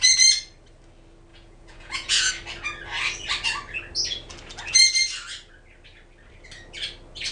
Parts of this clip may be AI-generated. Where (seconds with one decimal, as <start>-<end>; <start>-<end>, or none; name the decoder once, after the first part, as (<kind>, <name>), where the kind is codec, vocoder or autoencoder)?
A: 1.3-2.3 (vocoder, Vocos)